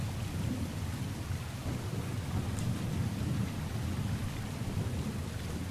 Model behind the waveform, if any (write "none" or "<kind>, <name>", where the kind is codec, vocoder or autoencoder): none